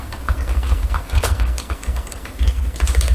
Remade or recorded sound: remade